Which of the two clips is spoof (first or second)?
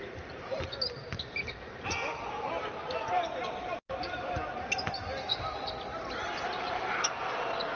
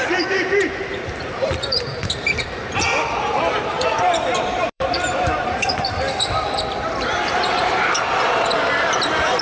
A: second